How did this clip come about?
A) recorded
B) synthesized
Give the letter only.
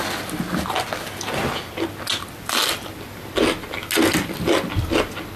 A